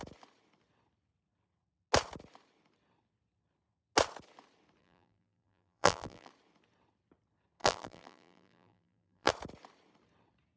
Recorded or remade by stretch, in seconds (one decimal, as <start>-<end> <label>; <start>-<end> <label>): 0.0-4.8 recorded; 4.8-6.3 remade; 6.3-7.6 recorded; 7.6-9.3 remade; 9.3-10.6 recorded

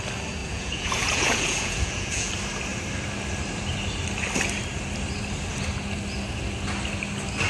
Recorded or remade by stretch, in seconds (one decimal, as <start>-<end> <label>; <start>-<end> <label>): 0.0-0.4 recorded; 0.4-2.3 remade; 2.3-7.5 recorded

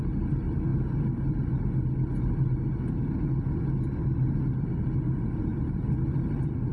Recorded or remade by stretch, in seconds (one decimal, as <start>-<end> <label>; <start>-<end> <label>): 0.0-6.7 recorded

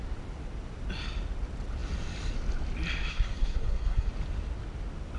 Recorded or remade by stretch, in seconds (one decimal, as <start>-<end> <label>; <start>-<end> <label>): 0.0-3.1 recorded; 3.1-4.1 remade; 4.1-5.2 recorded